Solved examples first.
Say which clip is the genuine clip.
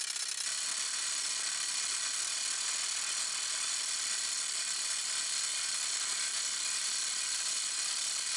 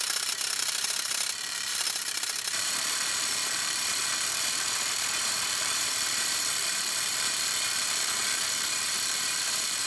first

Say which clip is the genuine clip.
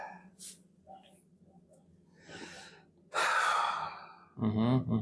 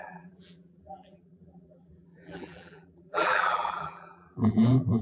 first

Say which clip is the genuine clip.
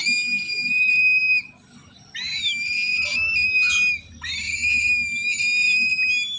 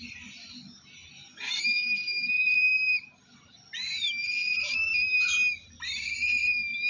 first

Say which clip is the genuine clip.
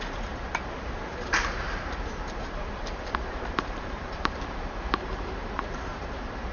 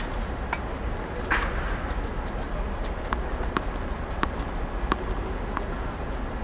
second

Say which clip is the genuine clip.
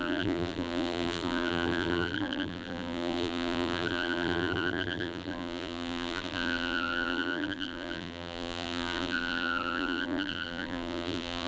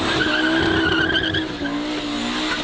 second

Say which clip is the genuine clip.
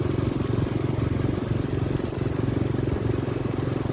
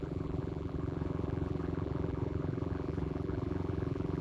first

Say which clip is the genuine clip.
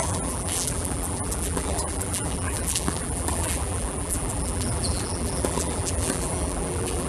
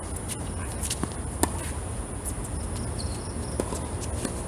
second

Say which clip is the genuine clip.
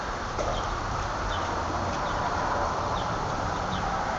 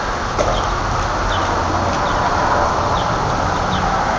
second